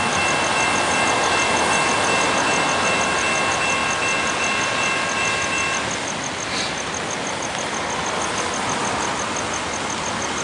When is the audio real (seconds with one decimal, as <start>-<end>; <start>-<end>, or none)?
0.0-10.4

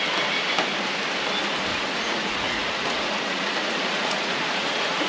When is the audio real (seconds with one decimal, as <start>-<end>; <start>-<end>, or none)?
0.0-1.7

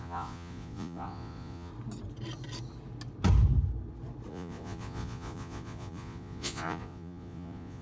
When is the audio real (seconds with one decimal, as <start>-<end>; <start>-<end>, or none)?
1.7-4.3

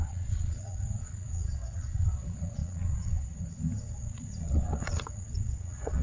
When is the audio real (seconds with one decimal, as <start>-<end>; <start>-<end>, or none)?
none

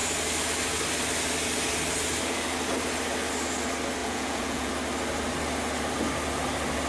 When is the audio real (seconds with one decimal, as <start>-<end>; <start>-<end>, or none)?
0.0-4.0; 4.7-6.9

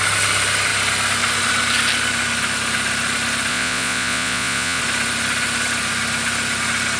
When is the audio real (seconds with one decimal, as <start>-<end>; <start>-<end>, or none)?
0.0-3.5; 4.8-7.0

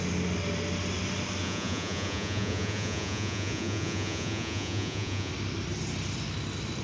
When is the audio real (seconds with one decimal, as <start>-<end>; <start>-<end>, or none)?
0.0-1.4; 5.3-6.8